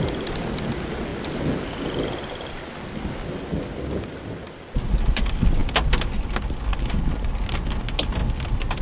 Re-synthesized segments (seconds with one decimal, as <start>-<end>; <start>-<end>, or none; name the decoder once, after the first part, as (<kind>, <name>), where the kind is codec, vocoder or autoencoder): none